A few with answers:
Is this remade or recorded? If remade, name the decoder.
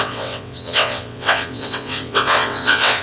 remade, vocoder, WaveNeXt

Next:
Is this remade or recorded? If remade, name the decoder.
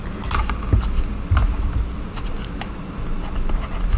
recorded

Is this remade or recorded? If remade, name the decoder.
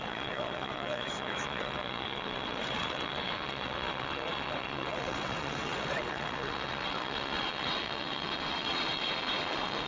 remade, vocoder, WaveNeXt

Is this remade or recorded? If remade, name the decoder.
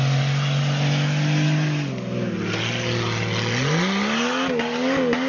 recorded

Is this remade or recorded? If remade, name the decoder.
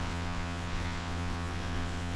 remade, vocoder, WaveNeXt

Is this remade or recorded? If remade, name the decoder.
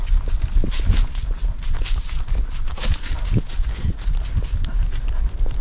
recorded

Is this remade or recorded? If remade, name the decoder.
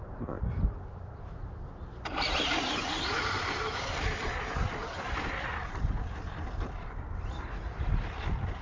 recorded